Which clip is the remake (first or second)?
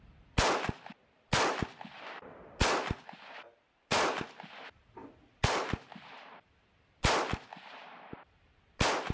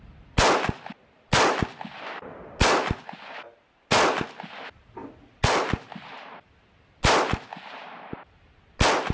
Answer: first